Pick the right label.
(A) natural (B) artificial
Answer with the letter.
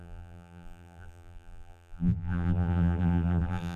B